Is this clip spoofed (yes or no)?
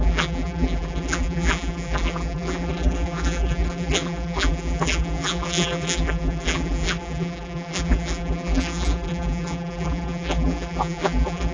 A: yes